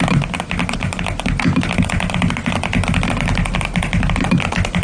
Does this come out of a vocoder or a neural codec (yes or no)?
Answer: no